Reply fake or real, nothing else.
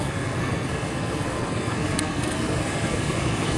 fake